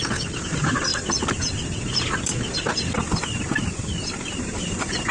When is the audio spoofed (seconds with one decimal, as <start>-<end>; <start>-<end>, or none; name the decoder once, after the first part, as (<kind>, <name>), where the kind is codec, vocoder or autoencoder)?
none